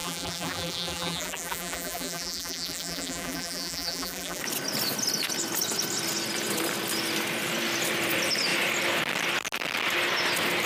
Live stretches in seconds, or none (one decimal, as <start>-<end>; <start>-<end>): 4.4-10.7